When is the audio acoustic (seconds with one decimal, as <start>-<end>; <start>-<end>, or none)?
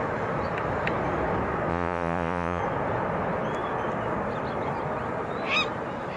0.0-1.7; 2.6-6.2